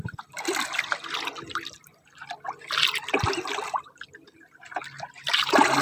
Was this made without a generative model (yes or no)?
yes